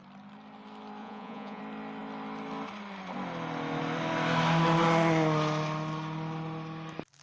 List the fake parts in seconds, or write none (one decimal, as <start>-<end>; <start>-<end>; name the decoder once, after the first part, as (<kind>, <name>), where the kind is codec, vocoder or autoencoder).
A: 1.0-1.6 (vocoder, Vocos)